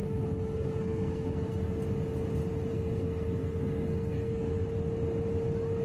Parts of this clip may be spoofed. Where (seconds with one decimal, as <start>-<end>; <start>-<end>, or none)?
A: 0.0-1.8; 2.7-4.6